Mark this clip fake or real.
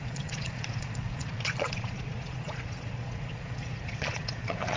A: fake